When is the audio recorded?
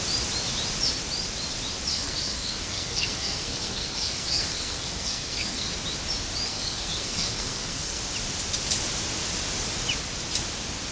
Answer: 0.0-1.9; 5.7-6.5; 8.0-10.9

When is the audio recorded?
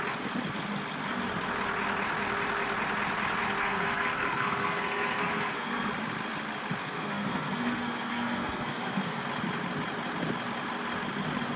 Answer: 0.0-3.6; 5.9-6.8; 9.2-11.6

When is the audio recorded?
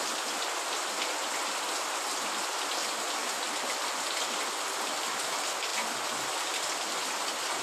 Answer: 0.0-7.6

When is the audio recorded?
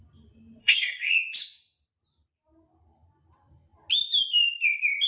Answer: 0.0-0.6; 1.1-5.1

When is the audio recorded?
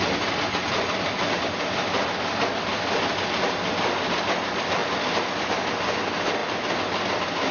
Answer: 0.0-7.5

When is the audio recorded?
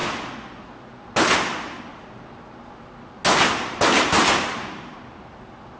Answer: 0.0-5.8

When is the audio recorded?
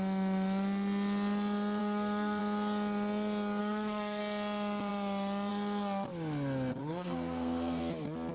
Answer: 0.0-1.8; 2.4-3.6; 4.2-6.8; 7.8-8.3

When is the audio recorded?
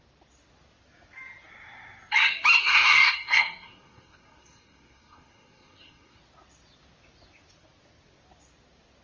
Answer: 0.0-2.6; 6.2-9.0